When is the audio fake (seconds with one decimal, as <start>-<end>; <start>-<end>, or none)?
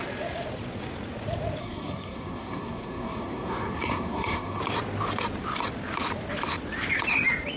1.6-4.6